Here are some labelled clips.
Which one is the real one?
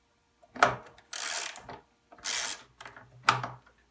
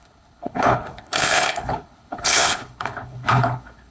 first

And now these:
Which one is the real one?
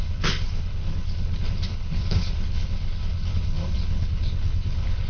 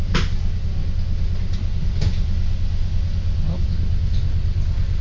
second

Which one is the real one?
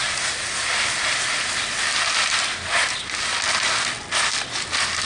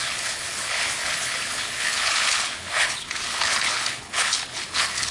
first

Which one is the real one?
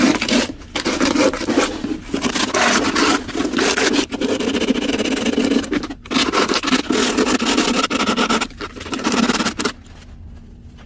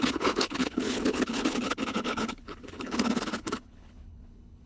first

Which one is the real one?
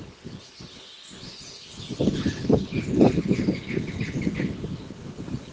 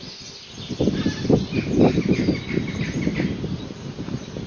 second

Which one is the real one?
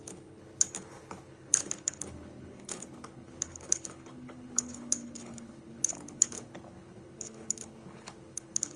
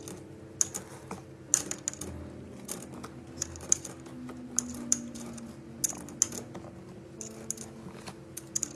second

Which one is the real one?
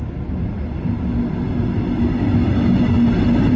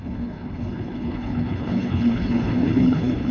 first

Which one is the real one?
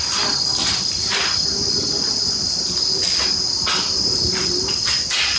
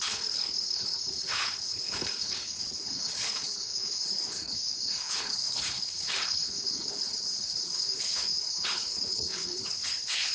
first